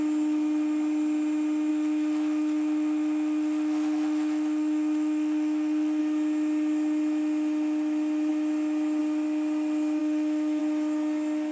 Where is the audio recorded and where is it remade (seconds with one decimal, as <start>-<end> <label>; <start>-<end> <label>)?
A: 0.0-1.7 recorded; 1.7-6.0 remade; 6.0-10.0 recorded; 10.0-10.6 remade; 10.6-11.5 recorded